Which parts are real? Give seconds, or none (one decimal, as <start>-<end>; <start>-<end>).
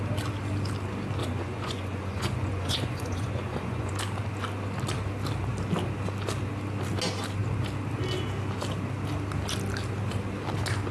0.0-1.2; 3.9-10.9